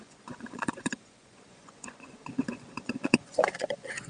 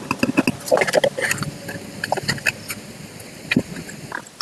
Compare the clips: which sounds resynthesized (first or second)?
first